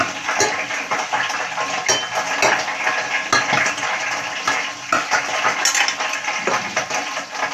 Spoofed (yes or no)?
no